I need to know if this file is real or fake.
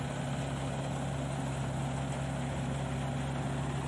real